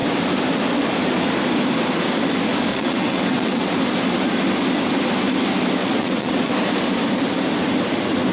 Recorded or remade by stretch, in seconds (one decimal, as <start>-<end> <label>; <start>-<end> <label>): 0.0-2.7 recorded; 2.7-3.7 remade; 3.7-5.8 recorded; 5.8-6.5 remade; 6.5-8.3 recorded